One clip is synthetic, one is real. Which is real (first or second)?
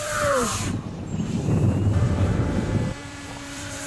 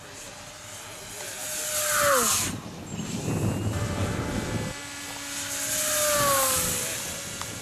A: second